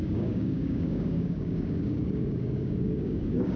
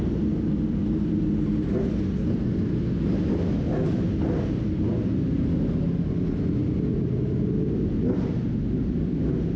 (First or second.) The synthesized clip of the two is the first